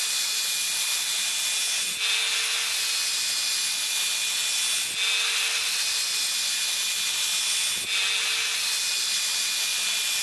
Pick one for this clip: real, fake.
real